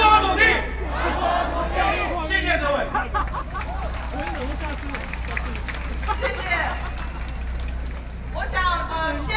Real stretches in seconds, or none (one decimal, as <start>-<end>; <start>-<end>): 0.0-3.0; 4.7-9.4